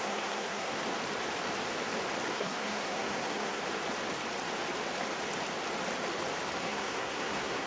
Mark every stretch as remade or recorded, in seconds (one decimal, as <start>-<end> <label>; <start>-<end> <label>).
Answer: 0.0-0.8 remade; 0.8-2.3 recorded; 2.3-3.6 remade; 3.6-6.6 recorded; 6.6-7.7 remade